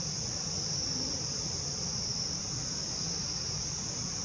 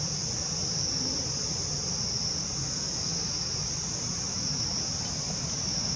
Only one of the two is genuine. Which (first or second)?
second